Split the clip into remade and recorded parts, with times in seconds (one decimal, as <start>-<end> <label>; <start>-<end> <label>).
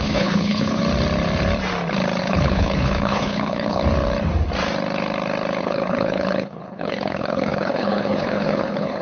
0.0-0.8 remade; 0.8-2.2 recorded; 2.2-3.8 remade; 3.8-5.6 recorded; 5.6-9.0 remade